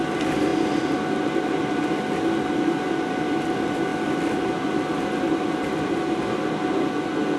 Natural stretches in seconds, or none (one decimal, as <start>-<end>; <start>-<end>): 0.0-0.5; 3.2-7.4